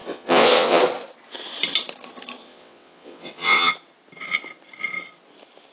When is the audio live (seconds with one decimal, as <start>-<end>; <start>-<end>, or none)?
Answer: 0.8-2.4; 3.7-5.7